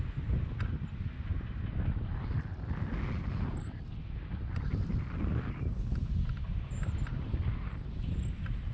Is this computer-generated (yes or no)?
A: no